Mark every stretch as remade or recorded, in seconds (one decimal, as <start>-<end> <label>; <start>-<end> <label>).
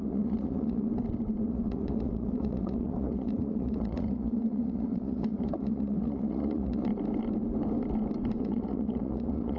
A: 0.0-0.9 remade; 0.9-1.5 recorded; 1.5-6.9 remade; 6.9-8.4 recorded; 8.4-9.6 remade